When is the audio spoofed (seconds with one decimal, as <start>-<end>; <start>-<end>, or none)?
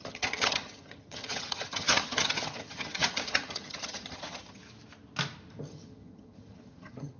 0.0-4.6; 5.6-7.2